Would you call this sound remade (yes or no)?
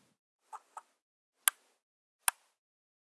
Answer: no